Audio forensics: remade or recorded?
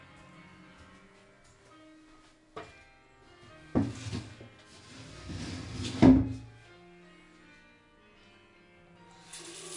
recorded